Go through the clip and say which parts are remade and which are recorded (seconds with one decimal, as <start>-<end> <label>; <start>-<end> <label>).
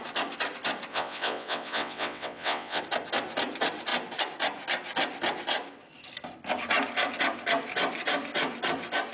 0.0-0.9 recorded; 0.9-2.8 remade; 2.8-9.1 recorded